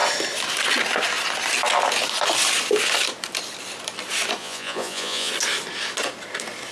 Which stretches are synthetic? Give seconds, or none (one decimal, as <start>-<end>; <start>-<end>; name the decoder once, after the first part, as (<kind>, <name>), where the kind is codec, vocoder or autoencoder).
4.4-5.3 (vocoder, Vocos)